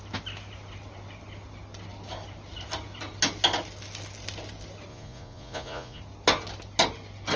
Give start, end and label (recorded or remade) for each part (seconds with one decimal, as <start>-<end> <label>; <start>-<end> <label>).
0.0-4.9 recorded; 4.9-6.0 remade; 6.0-7.4 recorded